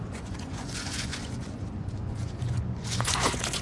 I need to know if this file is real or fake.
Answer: fake